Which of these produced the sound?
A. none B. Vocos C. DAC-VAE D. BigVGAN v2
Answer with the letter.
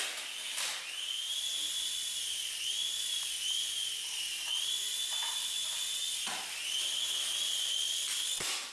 A